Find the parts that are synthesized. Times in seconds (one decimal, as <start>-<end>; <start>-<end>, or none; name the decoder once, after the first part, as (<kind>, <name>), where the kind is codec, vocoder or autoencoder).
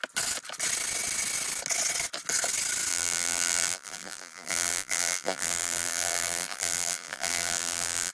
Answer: 2.9-8.1 (vocoder, BigVGAN v2)